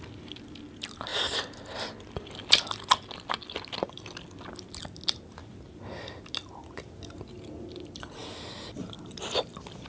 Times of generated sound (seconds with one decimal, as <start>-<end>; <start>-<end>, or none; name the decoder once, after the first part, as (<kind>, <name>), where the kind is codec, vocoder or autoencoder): none